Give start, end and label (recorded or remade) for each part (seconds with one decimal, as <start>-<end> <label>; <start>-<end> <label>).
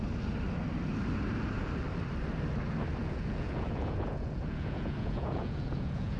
0.0-3.0 recorded; 3.0-6.2 remade